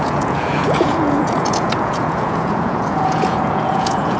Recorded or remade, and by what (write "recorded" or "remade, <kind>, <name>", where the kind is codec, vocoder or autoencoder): remade, vocoder, Vocos